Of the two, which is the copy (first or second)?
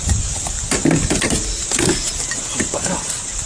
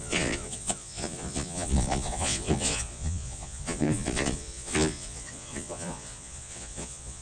second